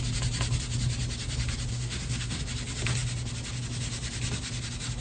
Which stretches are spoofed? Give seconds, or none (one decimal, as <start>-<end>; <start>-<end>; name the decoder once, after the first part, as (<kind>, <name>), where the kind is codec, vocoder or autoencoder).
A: 1.7-2.4 (codec, SNAC)